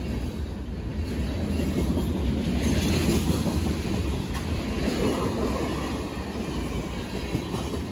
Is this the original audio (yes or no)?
yes